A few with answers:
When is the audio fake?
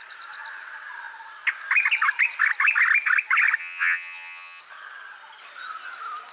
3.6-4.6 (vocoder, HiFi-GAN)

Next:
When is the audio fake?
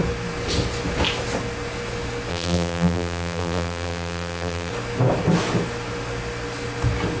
2.3-4.7 (vocoder, BigVGAN v2)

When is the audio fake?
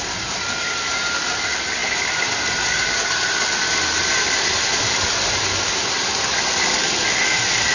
none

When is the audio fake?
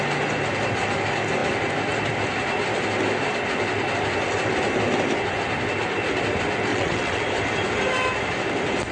6.7-7.2 (vocoder, WaveNeXt)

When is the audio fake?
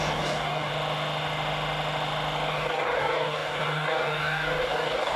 0.0-0.7 (codec, DAC); 2.5-5.2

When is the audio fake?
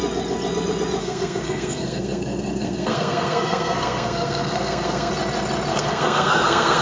1.0-5.1 (codec, SNAC); 5.7-6.8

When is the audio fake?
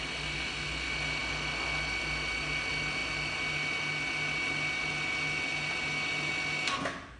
none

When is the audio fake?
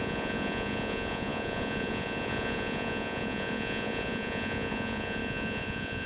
0.0-6.1 (vocoder, Vocos)